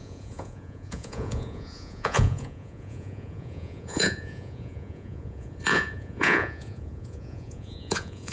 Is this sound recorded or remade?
remade